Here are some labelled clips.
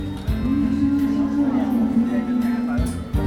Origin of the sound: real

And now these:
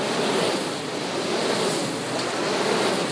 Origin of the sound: real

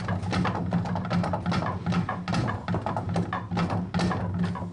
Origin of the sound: real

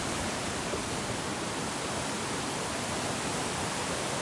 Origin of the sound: real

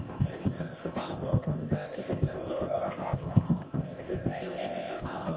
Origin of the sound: fake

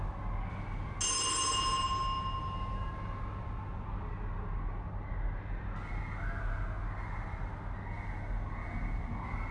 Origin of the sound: real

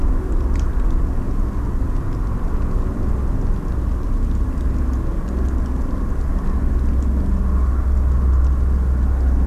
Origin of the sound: real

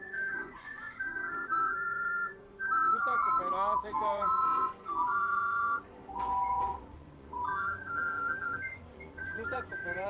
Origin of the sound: fake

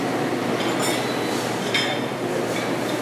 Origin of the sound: real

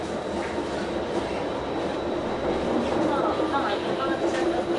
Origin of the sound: real